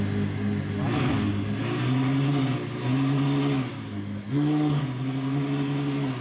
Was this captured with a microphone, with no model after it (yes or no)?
yes